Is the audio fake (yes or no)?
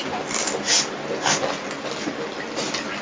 no